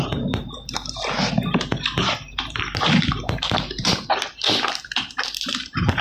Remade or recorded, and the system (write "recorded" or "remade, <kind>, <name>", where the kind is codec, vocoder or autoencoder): remade, vocoder, BigVGAN v2